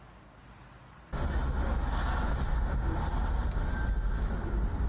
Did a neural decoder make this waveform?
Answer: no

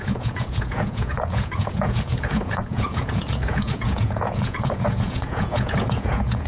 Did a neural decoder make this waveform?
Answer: yes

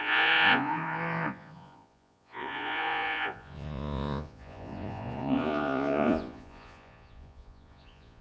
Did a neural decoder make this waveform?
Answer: yes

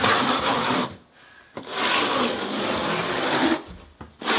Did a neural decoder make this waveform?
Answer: no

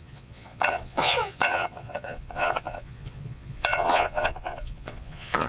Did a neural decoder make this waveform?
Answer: yes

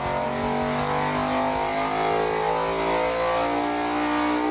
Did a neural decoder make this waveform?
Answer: no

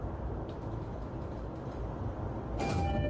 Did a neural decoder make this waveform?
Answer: no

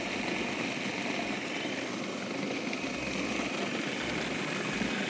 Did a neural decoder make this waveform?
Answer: no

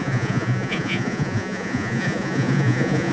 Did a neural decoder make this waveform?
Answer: yes